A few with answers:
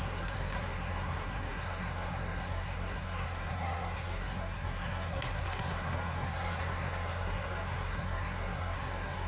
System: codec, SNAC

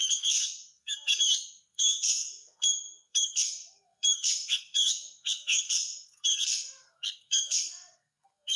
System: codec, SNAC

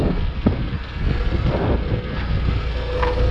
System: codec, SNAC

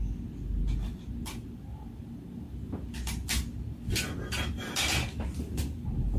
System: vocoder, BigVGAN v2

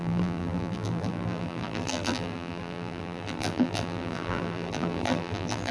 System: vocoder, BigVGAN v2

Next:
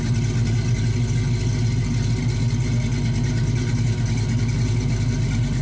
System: none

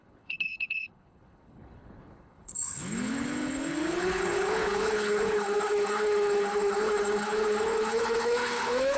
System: codec, HILCodec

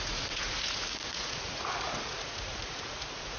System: vocoder, Vocos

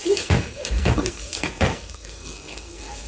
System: codec, SNAC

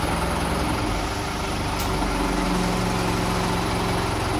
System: none